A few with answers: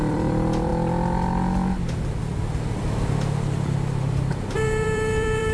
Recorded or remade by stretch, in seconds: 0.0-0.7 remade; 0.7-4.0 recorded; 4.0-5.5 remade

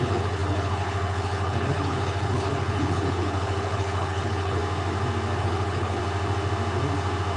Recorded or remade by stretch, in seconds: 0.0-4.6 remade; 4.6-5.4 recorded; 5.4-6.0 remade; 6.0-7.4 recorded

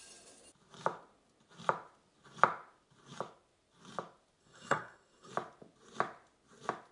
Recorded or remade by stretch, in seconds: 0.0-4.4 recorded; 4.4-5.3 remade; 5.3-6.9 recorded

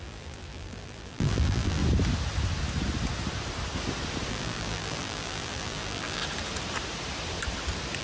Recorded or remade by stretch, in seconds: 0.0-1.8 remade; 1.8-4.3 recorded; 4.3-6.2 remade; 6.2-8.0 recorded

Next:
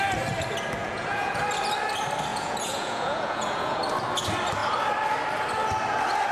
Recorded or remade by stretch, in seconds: 0.0-0.8 recorded; 0.8-1.4 remade; 1.4-2.3 recorded; 2.3-3.8 remade; 3.8-6.3 recorded